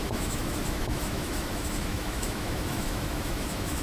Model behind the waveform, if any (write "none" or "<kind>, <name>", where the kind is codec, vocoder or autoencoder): autoencoder, DAC-VAE